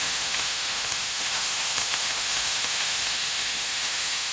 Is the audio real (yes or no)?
no